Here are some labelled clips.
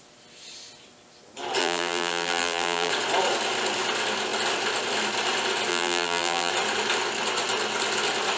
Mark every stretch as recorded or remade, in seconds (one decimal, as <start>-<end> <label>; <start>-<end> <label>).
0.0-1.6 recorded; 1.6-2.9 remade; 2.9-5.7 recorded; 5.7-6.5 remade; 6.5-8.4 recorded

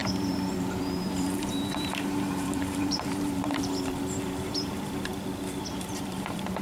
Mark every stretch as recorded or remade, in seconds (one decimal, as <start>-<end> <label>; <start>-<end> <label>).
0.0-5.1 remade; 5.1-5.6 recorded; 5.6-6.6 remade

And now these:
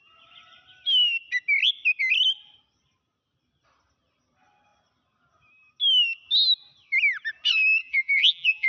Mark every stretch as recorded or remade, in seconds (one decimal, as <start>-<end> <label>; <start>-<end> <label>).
0.0-7.8 recorded; 7.8-8.7 remade